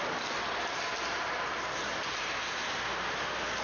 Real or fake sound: real